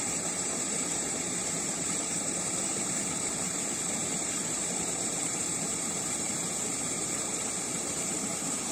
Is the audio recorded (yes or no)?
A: no